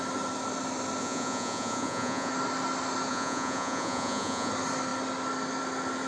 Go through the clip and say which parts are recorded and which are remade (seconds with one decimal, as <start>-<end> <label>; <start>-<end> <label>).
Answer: 0.0-1.0 recorded; 1.0-2.3 remade; 2.3-3.1 recorded; 3.1-4.5 remade; 4.5-6.1 recorded